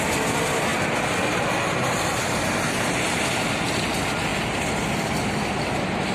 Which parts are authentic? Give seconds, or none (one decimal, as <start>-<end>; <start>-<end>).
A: 0.0-6.1